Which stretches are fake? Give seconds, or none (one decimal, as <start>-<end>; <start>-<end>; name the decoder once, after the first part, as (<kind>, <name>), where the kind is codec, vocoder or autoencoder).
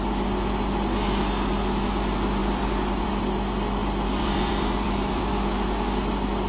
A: 2.4-3.1 (vocoder, BigVGAN v2); 3.8-5.3